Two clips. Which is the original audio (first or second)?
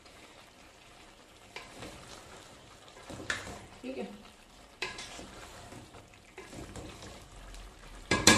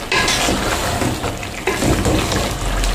second